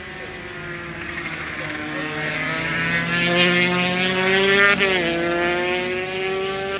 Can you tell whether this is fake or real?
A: real